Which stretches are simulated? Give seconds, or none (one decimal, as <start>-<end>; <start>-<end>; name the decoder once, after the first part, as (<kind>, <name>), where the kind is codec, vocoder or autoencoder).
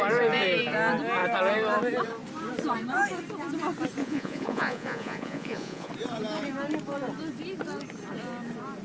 4.0-5.9 (vocoder, Vocos)